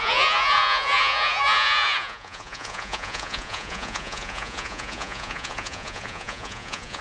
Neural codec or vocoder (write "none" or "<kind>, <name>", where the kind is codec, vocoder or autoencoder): vocoder, Vocos